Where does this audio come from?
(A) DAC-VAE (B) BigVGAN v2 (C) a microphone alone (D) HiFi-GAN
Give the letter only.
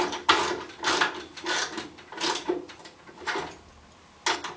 C